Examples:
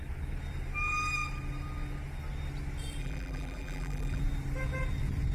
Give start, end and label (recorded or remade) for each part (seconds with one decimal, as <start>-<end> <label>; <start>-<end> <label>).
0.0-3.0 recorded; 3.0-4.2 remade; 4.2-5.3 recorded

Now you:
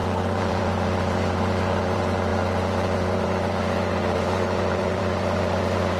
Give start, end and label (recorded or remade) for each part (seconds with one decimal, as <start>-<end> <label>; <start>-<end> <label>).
0.0-6.0 remade

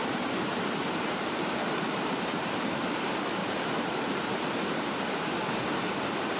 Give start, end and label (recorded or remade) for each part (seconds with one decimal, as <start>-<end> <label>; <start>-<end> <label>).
0.0-1.7 remade; 1.7-3.4 recorded; 3.4-4.8 remade; 4.8-6.4 recorded

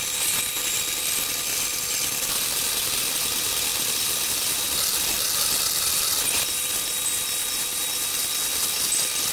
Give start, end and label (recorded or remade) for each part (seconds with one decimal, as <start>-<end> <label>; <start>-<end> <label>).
0.0-1.5 recorded; 1.5-3.1 remade; 3.1-9.3 recorded

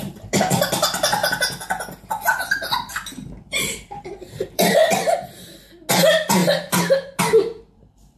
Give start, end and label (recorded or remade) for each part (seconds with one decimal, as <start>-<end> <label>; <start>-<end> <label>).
0.0-1.2 remade; 1.2-2.5 recorded; 2.5-4.8 remade; 4.8-5.9 recorded; 5.9-8.2 remade

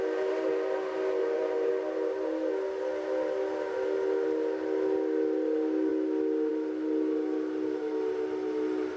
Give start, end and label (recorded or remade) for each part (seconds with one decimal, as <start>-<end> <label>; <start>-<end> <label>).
0.0-1.2 recorded; 1.2-1.7 remade; 1.7-9.0 recorded